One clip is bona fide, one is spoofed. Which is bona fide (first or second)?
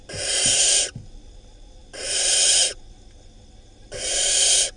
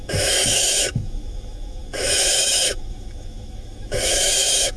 first